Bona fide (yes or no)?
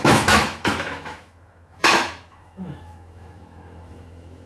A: no